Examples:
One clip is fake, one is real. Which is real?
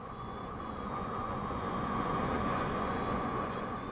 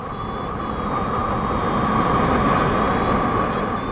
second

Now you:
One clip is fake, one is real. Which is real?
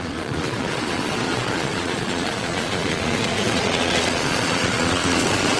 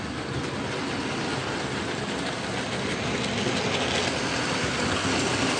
second